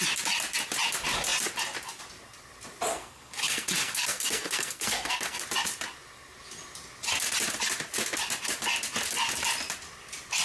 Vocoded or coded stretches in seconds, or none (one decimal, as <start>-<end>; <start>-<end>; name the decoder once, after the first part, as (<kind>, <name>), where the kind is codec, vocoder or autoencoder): 2.9-5.4 (codec, SNAC)